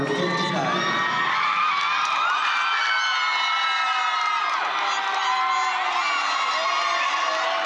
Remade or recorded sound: recorded